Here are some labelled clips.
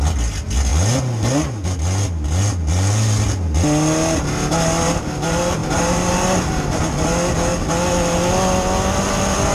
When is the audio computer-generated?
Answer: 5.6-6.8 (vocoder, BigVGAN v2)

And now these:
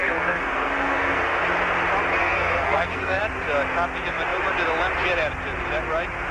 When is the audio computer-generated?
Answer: 0.0-1.4 (codec, SNAC); 2.2-3.2

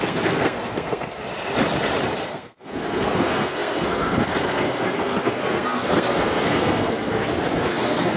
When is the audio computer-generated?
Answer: 0.0-1.2 (codec, SNAC); 2.3-8.2